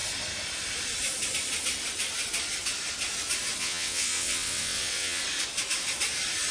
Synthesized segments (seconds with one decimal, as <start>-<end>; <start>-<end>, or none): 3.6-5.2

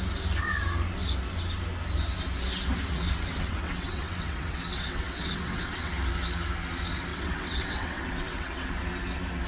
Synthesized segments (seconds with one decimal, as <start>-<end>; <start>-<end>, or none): 2.9-5.9; 7.1-8.7

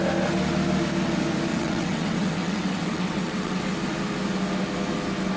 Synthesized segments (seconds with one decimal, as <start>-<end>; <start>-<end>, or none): 1.5-3.6

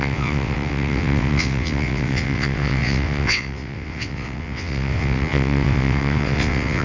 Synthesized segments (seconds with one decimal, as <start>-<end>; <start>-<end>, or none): 0.0-6.8

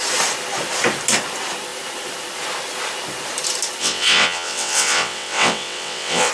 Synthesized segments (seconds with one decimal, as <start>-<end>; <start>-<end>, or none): 3.8-6.3